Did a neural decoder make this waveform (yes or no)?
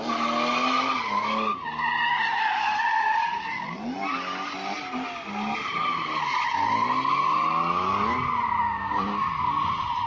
no